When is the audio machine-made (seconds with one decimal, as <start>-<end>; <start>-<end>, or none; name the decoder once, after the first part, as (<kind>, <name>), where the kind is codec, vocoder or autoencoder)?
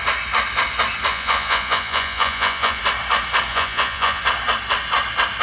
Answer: 1.1-2.8 (vocoder, Vocos); 3.5-4.2